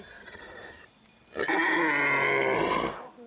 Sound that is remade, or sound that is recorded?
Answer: recorded